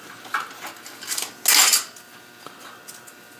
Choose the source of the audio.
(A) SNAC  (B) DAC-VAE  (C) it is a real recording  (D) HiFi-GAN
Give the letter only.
C